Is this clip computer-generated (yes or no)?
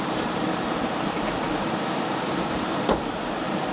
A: yes